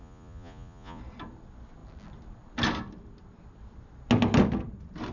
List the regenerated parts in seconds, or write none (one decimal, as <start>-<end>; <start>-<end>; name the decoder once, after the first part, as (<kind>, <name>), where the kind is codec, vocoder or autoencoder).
0.0-1.0 (vocoder, Vocos)